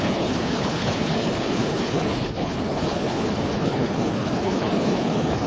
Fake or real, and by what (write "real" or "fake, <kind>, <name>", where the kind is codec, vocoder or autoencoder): fake, codec, HILCodec